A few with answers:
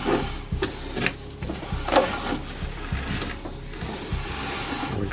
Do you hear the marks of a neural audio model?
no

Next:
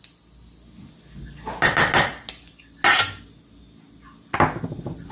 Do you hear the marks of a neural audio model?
no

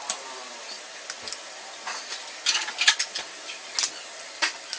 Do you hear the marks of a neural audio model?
no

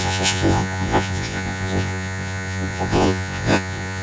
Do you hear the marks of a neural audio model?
yes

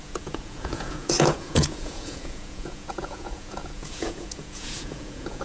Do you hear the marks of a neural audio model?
yes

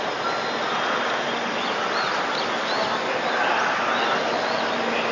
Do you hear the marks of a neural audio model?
no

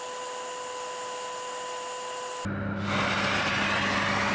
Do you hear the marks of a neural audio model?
no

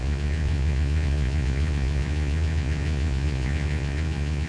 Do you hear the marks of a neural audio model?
yes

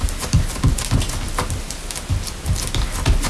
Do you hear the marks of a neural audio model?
no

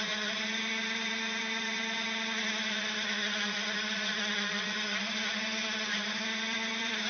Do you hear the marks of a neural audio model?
yes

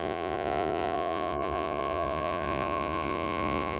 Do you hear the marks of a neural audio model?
yes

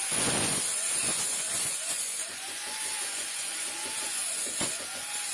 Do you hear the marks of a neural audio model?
yes